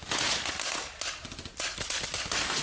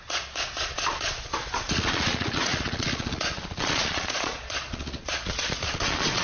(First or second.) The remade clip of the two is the second